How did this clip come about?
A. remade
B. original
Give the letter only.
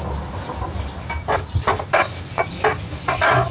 B